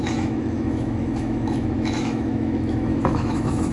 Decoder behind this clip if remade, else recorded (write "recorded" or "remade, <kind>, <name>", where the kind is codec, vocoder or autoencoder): remade, autoencoder, DAC-VAE